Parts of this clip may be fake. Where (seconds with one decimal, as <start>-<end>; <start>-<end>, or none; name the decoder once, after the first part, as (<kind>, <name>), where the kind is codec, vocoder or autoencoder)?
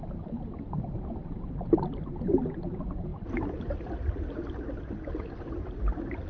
none